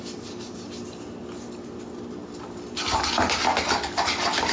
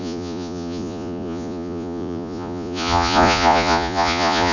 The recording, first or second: first